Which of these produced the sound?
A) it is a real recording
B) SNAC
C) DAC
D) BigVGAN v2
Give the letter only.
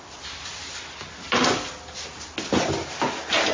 A